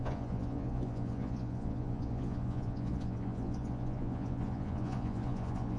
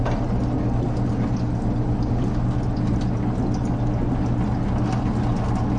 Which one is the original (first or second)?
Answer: second